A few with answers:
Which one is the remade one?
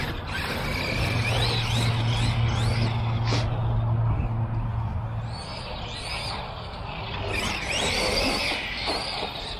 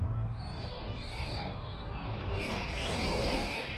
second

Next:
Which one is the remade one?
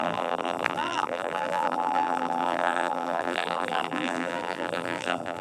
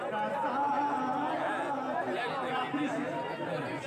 first